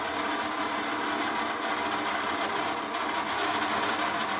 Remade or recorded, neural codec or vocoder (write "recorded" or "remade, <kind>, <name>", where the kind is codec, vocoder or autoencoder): recorded